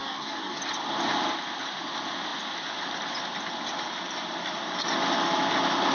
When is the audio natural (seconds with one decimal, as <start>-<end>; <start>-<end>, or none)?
0.6-5.9